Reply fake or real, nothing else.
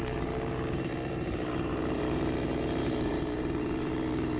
fake